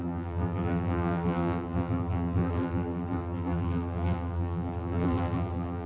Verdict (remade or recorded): remade